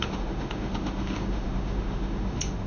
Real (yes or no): no